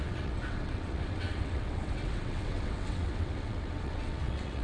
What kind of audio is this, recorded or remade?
remade